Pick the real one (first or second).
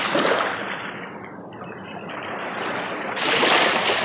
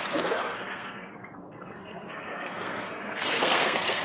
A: first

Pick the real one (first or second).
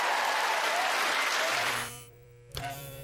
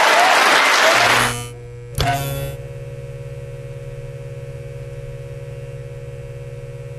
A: second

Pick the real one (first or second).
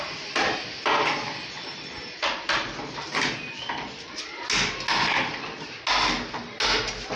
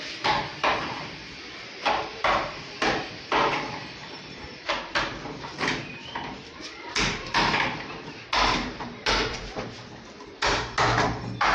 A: first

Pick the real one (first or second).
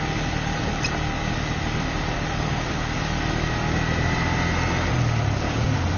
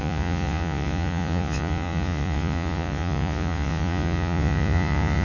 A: first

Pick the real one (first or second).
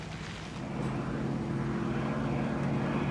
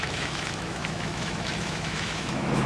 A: first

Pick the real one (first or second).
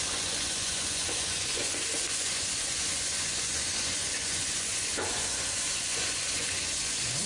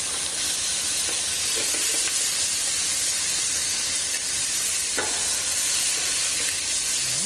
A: second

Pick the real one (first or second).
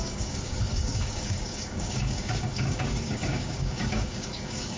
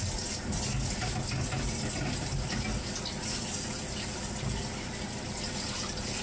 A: second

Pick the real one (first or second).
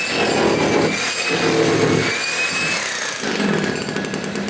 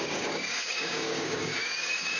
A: first